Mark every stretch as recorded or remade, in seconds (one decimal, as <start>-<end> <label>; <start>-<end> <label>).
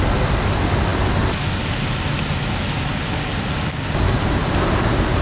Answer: 0.0-5.2 recorded